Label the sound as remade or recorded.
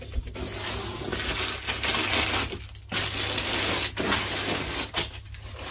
recorded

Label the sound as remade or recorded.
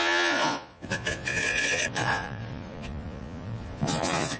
remade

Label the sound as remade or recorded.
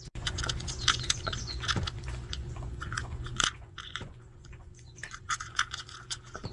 remade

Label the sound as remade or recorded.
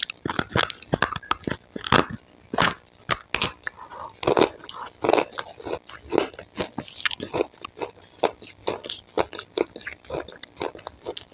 recorded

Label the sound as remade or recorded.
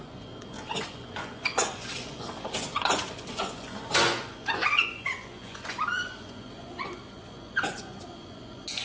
remade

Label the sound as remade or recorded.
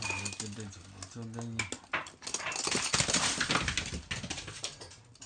recorded